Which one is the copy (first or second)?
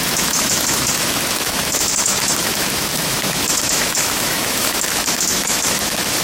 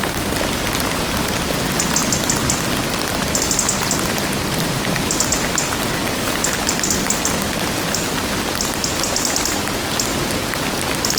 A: first